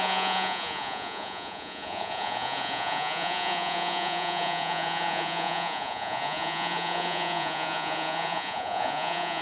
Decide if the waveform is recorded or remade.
remade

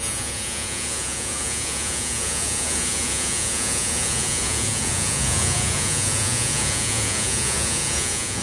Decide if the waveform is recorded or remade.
remade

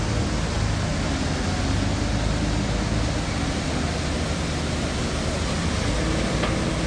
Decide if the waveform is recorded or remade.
recorded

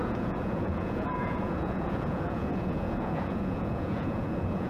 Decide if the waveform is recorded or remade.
remade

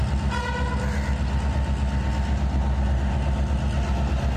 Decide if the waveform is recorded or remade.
recorded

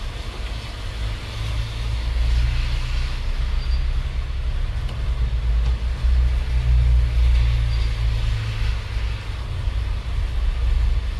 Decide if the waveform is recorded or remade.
recorded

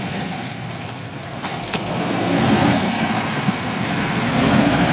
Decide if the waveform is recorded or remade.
remade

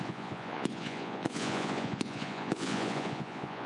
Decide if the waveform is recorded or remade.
remade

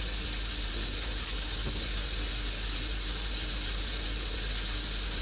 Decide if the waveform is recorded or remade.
recorded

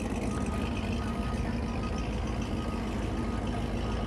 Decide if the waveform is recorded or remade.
recorded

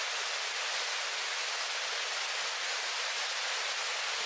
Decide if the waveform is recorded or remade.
recorded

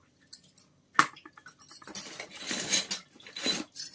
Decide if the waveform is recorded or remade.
recorded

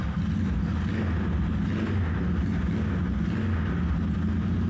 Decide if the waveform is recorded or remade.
recorded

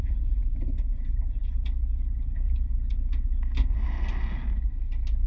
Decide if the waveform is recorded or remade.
recorded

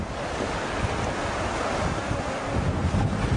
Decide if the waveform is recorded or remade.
recorded